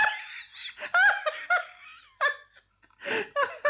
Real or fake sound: real